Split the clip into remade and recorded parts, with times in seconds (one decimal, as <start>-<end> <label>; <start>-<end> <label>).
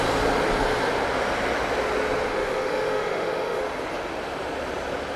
0.0-2.3 recorded; 2.3-3.6 remade; 3.6-5.2 recorded